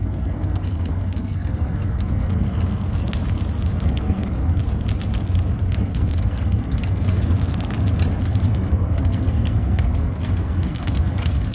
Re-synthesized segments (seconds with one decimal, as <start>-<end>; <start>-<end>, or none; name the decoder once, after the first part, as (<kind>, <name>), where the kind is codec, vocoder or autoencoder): 0.0-3.0 (codec, SNAC); 3.7-4.6; 5.7-7.2; 8.2-11.5